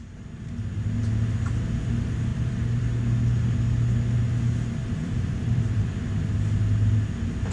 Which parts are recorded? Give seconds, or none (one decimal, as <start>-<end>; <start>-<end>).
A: 0.0-2.3; 2.8-4.8; 5.9-7.5